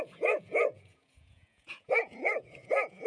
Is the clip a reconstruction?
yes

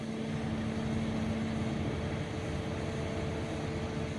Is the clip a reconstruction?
no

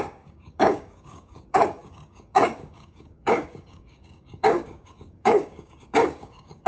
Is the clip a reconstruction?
yes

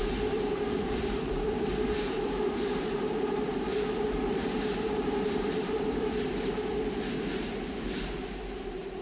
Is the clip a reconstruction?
yes